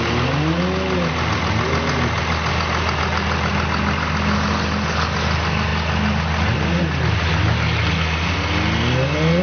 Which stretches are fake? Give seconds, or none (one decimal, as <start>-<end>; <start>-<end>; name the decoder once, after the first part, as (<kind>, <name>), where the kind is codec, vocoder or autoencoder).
none